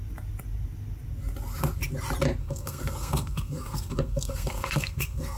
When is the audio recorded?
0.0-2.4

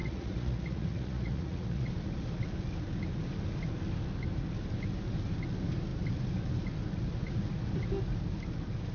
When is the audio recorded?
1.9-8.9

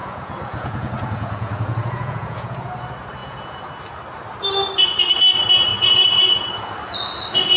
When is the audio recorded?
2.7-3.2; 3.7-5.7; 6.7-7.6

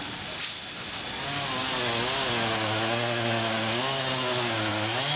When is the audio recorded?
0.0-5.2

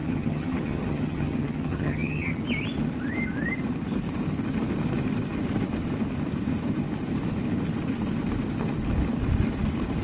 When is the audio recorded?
2.3-10.0

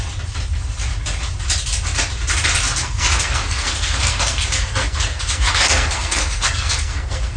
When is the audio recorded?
0.0-2.8